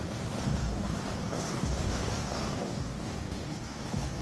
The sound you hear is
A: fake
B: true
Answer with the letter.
A